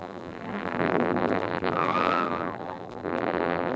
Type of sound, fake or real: fake